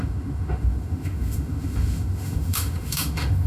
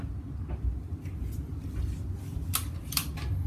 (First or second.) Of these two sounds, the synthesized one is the first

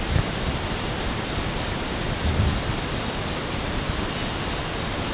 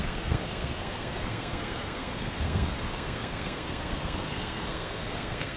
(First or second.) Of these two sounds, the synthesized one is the second